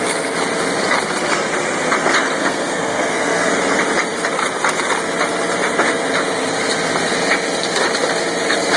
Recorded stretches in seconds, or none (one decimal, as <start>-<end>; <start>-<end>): 0.0-2.4; 3.5-8.8